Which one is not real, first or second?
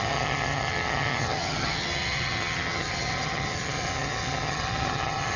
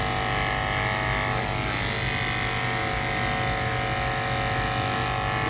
first